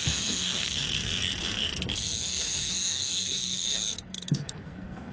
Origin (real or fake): fake